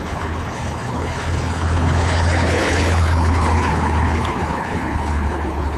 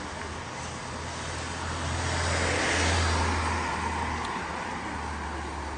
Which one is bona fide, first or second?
second